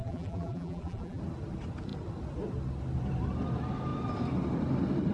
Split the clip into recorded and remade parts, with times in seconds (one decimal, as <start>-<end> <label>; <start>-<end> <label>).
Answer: 0.0-1.2 remade; 1.2-5.1 recorded